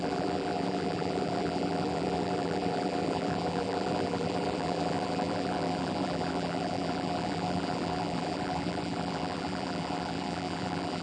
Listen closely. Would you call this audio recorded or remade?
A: remade